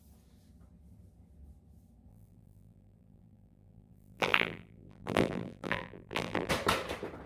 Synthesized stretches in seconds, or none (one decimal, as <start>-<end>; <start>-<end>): 2.1-6.5

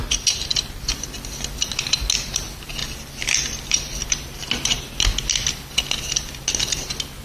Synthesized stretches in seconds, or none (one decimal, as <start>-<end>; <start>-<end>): 0.5-1.7; 2.8-4.9

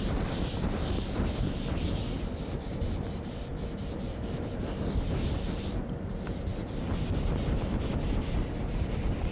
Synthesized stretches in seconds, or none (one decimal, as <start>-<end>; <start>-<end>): 0.0-6.5; 7.6-9.3

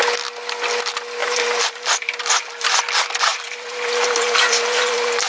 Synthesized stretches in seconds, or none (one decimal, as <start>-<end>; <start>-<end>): 1.2-2.8; 3.3-5.3

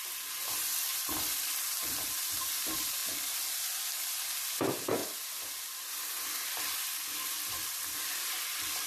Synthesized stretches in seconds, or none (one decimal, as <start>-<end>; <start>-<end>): 0.0-3.0; 3.5-8.9

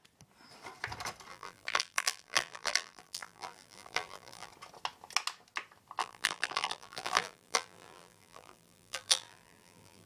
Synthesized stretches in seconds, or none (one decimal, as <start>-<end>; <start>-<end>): 1.3-4.5; 6.0-10.1

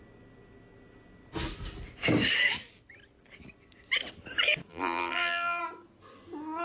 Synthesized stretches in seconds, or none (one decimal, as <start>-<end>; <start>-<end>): 4.7-5.6